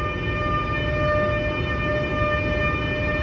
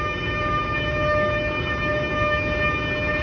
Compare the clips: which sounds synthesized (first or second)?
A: second